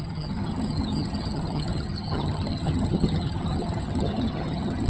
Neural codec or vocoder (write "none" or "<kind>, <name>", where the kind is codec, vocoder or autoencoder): vocoder, HiFi-GAN